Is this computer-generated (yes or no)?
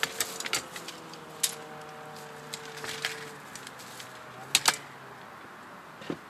no